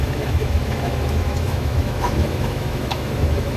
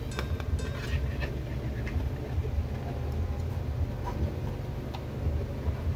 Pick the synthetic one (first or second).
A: first